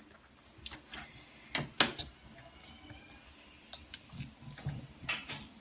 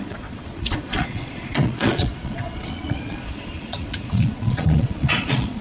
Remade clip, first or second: second